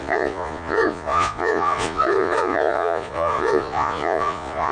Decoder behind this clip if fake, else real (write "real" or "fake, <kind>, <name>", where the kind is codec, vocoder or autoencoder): fake, vocoder, Vocos